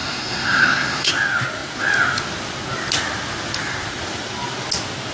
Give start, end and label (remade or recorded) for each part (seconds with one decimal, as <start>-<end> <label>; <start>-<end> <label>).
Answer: 0.0-1.1 remade; 1.1-5.1 recorded